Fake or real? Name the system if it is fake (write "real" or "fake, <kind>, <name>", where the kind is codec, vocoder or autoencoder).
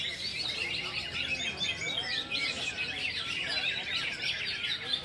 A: real